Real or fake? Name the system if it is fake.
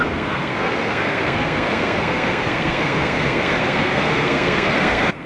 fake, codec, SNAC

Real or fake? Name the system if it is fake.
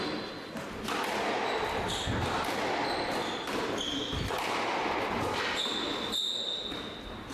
real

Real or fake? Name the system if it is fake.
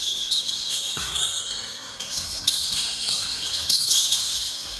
fake, codec, SNAC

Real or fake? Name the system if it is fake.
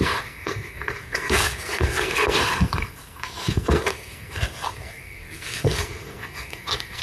fake, codec, SNAC